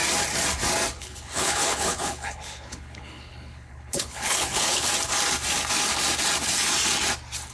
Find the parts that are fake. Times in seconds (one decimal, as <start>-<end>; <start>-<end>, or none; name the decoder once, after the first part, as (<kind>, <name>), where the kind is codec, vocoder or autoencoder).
1.0-4.9 (codec, HILCodec)